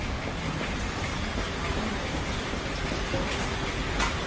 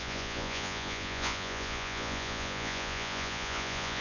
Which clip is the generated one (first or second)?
second